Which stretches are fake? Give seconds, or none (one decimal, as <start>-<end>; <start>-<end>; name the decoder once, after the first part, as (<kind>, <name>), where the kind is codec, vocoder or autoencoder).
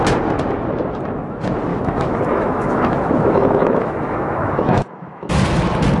1.7-5.3 (autoencoder, DAC-VAE)